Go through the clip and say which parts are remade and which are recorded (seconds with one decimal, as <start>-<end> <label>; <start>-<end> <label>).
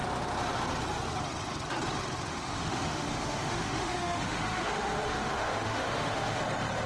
0.0-2.3 recorded; 2.3-6.4 remade; 6.4-6.9 recorded